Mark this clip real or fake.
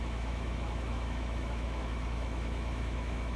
fake